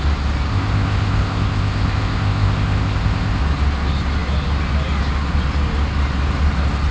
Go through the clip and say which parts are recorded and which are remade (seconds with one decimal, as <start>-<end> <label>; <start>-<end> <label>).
0.0-0.5 recorded; 0.5-3.4 remade; 3.4-6.9 recorded

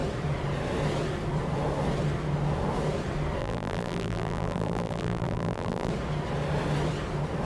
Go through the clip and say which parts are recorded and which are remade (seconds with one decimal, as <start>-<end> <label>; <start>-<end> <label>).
0.0-3.4 recorded; 3.4-5.9 remade; 5.9-7.5 recorded

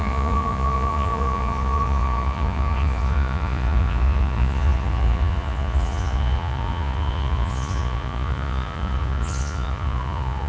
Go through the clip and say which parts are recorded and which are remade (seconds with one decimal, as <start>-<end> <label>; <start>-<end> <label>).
0.0-10.5 remade

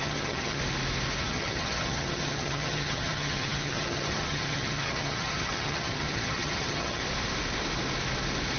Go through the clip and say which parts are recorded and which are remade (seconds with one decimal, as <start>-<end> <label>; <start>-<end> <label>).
0.0-0.6 remade; 0.6-1.2 recorded; 1.2-7.0 remade; 7.0-8.6 recorded

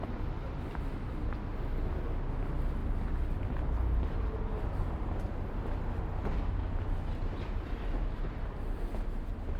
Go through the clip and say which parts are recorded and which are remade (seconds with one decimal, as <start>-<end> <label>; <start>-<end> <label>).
0.0-2.8 recorded; 2.8-3.4 remade; 3.4-9.6 recorded

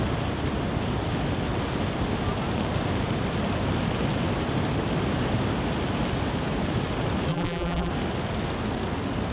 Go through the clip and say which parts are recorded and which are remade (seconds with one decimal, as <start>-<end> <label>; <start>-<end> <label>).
0.0-7.3 recorded; 7.3-7.9 remade; 7.9-9.3 recorded

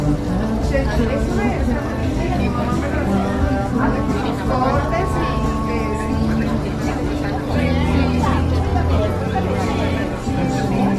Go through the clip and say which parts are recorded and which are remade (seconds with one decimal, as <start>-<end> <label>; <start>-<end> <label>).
0.0-2.0 recorded; 2.0-4.5 remade; 4.5-11.0 recorded

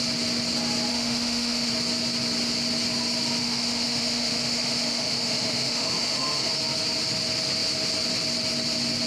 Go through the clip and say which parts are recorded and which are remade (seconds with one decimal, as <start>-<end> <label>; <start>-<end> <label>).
0.0-0.9 recorded; 0.9-1.7 remade; 1.7-3.4 recorded; 3.4-6.5 remade; 6.5-9.1 recorded